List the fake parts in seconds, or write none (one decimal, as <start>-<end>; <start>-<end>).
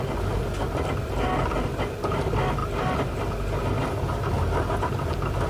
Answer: none